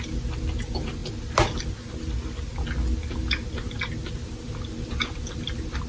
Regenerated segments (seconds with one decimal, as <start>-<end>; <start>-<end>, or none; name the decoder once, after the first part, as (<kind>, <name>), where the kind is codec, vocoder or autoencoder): none